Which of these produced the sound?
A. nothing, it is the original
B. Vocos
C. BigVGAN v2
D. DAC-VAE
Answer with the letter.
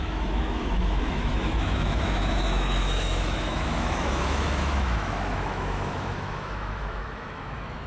D